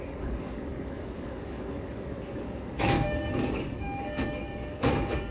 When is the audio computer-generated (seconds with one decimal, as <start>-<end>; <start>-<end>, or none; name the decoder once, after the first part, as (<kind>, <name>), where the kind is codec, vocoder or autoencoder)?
0.0-5.3 (codec, DAC)